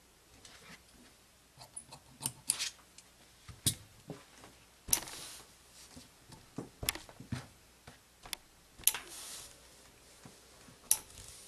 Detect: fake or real real